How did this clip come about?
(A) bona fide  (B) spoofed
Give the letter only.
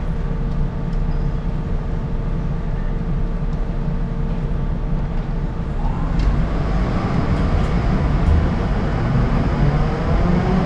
A